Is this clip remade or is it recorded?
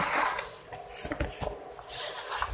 recorded